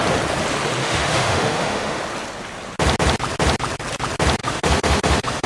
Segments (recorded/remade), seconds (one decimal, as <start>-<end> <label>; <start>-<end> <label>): 0.0-0.8 recorded; 0.8-2.0 remade; 2.0-4.4 recorded; 4.4-5.5 remade